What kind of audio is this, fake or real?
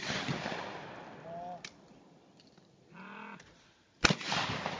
real